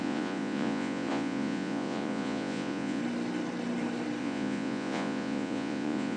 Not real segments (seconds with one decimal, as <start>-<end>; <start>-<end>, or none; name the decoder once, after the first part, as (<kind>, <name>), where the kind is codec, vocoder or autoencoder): 0.0-3.0 (vocoder, Vocos); 4.2-6.2